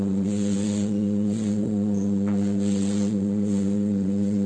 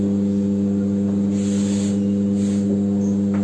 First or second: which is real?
second